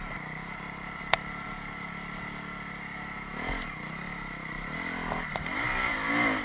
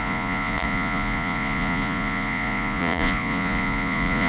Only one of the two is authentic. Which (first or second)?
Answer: first